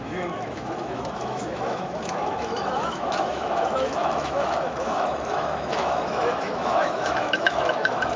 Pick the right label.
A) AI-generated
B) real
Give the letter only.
A